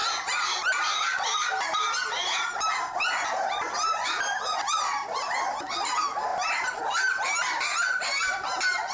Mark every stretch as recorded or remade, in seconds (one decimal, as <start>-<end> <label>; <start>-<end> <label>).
0.0-8.9 recorded